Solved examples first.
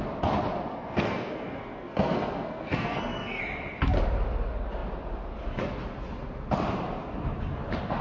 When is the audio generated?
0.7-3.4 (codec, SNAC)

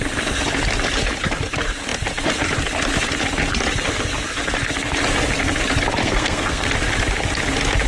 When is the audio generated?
6.0-6.7 (codec, SNAC)

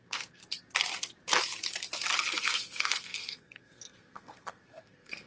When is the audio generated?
0.0-0.4 (codec, SNAC); 2.3-5.3

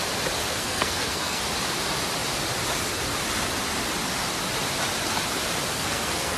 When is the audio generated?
0.4-1.4 (codec, SNAC); 5.7-6.4